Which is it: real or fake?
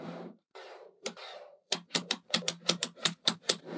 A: fake